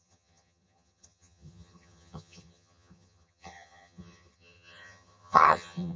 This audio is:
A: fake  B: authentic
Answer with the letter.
A